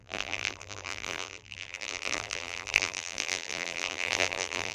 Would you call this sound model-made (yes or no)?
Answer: yes